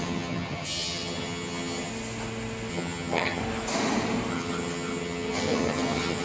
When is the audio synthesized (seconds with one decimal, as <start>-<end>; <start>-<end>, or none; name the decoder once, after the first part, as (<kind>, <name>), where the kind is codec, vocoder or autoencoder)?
0.0-1.9 (vocoder, HiFi-GAN); 2.7-3.4; 4.3-6.2